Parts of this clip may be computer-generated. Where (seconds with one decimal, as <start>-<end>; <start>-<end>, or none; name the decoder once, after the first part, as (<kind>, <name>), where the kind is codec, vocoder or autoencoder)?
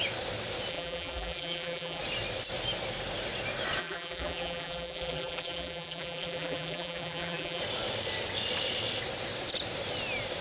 0.7-2.0 (vocoder, BigVGAN v2); 3.8-7.6